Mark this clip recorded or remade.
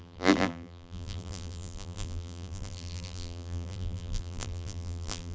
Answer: remade